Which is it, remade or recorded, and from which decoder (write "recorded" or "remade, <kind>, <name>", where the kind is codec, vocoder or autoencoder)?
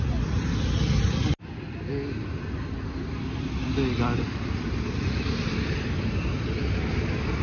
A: recorded